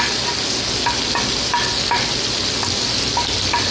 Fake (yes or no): no